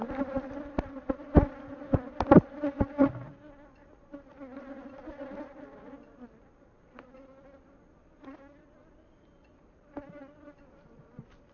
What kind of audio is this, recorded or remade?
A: recorded